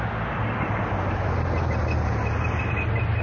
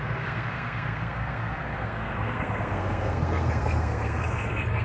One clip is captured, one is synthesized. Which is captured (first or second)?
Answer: first